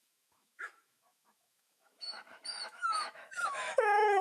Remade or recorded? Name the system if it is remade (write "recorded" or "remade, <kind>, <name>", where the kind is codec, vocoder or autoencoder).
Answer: remade, autoencoder, DAC-VAE